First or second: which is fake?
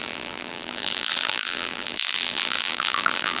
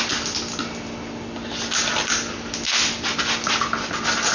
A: first